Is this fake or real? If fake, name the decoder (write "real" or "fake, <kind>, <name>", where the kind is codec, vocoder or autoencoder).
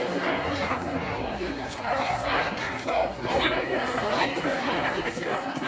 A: fake, codec, SNAC